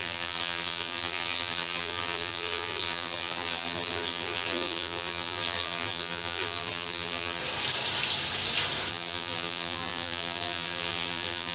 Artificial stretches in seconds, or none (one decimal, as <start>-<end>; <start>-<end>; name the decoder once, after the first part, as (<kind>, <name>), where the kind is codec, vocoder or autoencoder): 0.0-7.4 (vocoder, BigVGAN v2); 8.9-11.5